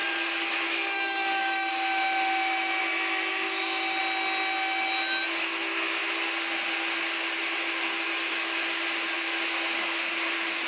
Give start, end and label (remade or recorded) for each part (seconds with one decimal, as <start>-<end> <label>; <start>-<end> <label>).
0.0-1.7 remade; 1.7-2.8 recorded; 2.8-4.0 remade; 4.0-5.4 recorded; 5.4-6.0 remade; 6.0-7.6 recorded; 7.6-8.8 remade; 8.8-10.7 recorded